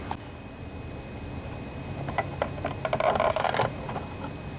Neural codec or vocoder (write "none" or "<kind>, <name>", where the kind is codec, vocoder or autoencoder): none